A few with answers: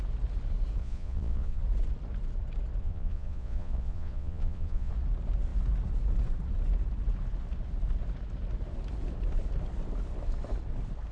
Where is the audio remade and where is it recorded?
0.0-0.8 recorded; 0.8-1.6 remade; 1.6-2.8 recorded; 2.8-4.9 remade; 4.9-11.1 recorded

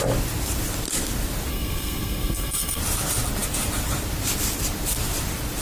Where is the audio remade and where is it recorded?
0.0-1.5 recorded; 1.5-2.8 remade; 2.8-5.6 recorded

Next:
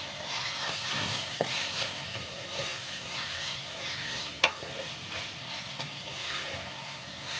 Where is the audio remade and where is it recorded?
0.0-4.7 remade; 4.7-5.4 recorded; 5.4-7.4 remade